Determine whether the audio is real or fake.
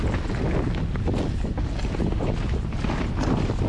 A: real